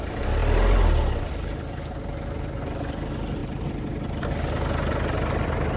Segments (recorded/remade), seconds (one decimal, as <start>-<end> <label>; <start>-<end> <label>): 0.0-5.8 recorded